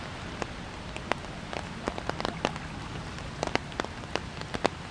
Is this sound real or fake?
real